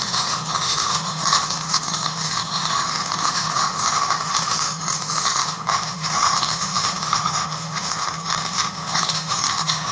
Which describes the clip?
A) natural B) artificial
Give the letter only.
B